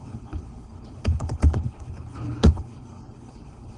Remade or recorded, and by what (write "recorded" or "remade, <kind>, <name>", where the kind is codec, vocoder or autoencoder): remade, codec, HILCodec